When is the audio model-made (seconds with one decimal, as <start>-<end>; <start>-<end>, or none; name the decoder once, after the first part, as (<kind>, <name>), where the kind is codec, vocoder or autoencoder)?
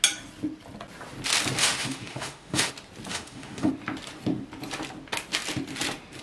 1.6-2.7 (autoencoder, DAC-VAE); 3.1-3.7